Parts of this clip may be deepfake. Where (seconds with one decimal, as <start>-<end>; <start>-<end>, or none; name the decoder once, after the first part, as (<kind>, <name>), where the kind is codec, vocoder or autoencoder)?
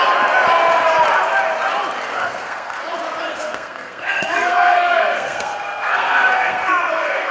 2.1-2.8 (codec, SNAC); 3.3-7.3